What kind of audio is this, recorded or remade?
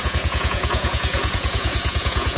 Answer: remade